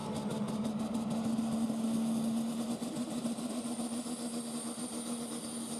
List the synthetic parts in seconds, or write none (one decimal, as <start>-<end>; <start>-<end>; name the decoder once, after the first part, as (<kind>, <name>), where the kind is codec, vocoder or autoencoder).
none